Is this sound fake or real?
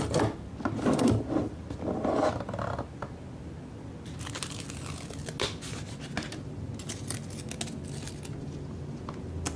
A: real